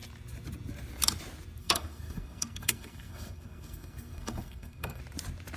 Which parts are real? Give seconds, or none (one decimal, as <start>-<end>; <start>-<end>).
0.0-1.6; 5.0-5.6